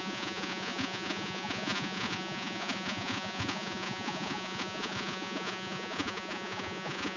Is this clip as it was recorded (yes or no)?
no